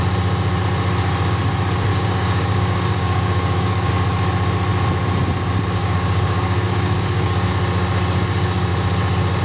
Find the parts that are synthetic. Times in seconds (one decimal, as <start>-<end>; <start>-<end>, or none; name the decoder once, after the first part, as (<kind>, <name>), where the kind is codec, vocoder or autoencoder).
1.9-3.9 (codec, DAC); 5.8-7.5